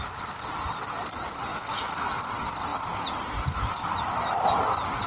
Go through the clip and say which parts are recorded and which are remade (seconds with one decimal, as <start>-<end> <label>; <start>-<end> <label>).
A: 0.0-1.5 recorded; 1.5-2.2 remade; 2.2-5.1 recorded